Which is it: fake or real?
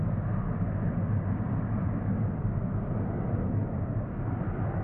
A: real